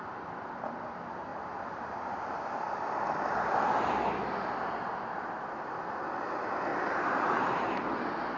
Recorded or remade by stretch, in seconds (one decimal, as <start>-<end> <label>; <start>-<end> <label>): 0.0-1.3 recorded; 1.3-2.3 remade; 2.3-6.7 recorded; 6.7-7.8 remade; 7.8-8.4 recorded